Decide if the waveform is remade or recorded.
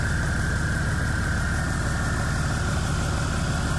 recorded